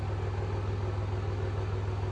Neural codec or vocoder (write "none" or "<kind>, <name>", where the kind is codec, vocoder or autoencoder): none